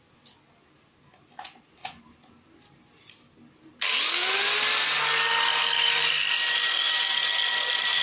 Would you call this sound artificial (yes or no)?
no